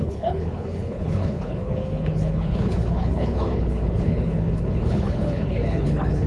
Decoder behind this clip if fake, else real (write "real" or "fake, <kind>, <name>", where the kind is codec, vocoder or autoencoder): fake, codec, HILCodec